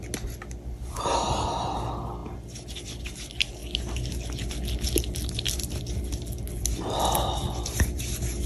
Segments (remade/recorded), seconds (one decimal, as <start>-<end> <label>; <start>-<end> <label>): 0.0-8.5 recorded